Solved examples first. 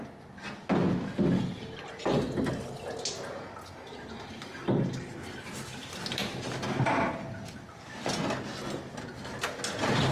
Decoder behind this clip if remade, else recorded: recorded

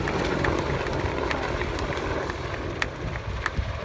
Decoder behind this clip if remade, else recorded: recorded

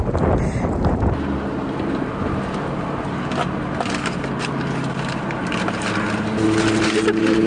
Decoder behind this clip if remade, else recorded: recorded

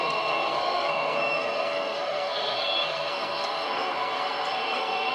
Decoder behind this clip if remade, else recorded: remade, codec, SNAC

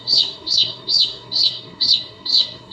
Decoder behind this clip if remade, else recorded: remade, codec, SNAC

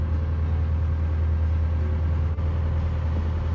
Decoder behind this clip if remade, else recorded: recorded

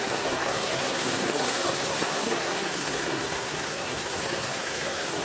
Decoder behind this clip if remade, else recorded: remade, codec, SNAC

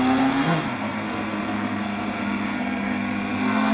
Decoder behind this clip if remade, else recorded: remade, codec, SNAC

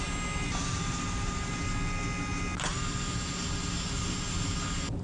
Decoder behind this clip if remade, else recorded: recorded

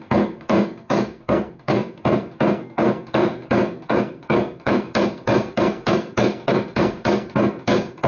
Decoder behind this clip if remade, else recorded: remade, codec, SNAC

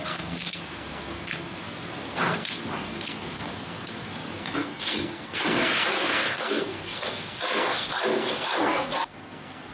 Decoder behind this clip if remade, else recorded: remade, codec, SNAC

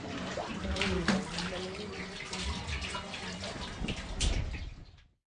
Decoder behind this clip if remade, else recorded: recorded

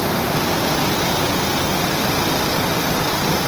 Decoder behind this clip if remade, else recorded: recorded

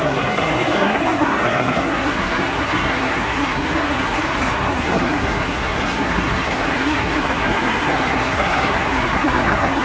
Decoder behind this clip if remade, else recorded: remade, codec, SNAC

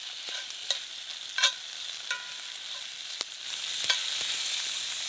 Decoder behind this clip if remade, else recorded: recorded